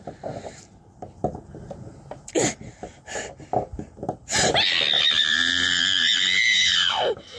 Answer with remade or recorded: recorded